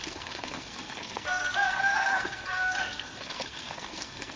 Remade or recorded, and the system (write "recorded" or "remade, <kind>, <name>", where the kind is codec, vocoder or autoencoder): remade, codec, SNAC